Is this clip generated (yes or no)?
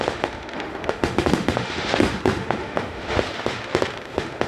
yes